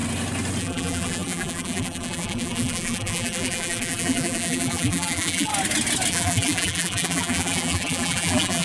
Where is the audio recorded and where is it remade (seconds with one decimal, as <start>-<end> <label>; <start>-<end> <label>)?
0.0-0.6 recorded; 0.6-5.5 remade; 5.5-6.1 recorded; 6.1-8.6 remade